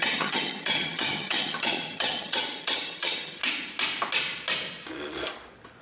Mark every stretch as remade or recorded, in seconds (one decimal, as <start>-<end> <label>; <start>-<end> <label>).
0.0-3.4 remade; 3.4-5.8 recorded